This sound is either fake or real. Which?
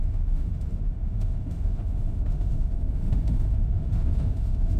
fake